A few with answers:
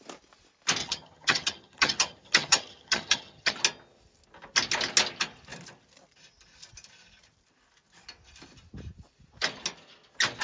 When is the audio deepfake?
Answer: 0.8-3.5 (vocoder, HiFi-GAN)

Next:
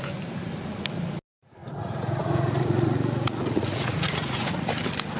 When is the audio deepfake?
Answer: 1.6-4.7 (vocoder, Vocos)